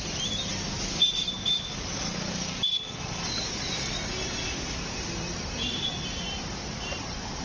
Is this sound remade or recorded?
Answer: recorded